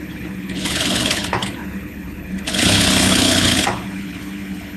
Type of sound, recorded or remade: remade